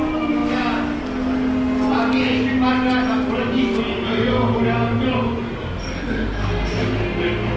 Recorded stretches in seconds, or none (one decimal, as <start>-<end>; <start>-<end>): 0.0-7.6